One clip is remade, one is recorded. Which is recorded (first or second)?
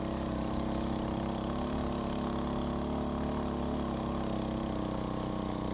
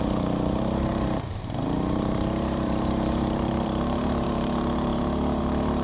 first